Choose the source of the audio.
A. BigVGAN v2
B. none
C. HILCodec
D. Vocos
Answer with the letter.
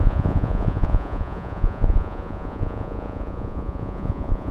D